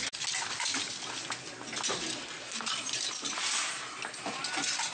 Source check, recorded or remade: recorded